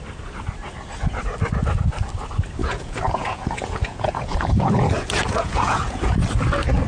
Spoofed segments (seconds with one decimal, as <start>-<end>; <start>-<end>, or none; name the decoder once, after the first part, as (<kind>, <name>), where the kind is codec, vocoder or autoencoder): 2.6-6.0 (vocoder, Vocos)